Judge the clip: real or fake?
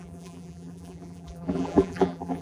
fake